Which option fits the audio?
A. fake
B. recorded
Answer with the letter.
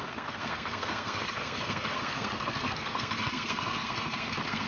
A